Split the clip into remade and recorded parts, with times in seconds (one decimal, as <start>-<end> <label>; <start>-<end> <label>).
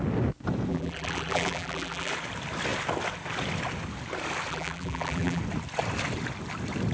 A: 0.0-0.7 recorded; 0.7-2.1 remade; 2.1-4.5 recorded; 4.5-5.4 remade; 5.4-6.9 recorded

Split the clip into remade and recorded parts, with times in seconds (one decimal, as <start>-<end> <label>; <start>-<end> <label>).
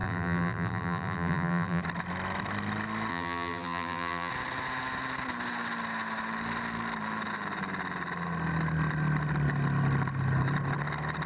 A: 0.0-1.8 remade; 1.8-3.1 recorded; 3.1-4.3 remade; 4.3-11.3 recorded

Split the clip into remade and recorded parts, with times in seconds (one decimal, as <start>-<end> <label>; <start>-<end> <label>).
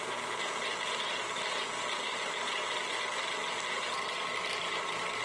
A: 0.0-2.6 remade; 2.6-3.7 recorded; 3.7-5.2 remade